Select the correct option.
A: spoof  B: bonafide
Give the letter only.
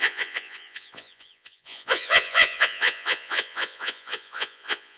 A